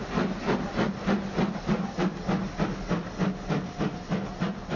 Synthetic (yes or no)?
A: no